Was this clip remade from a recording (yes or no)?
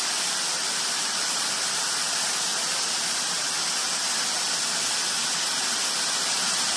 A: no